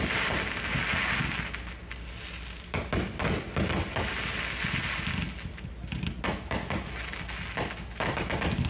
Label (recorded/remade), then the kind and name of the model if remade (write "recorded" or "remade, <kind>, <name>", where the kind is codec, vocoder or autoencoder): recorded